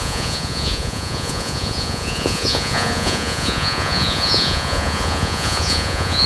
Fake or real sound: fake